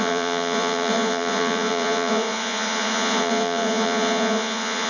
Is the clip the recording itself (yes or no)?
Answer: no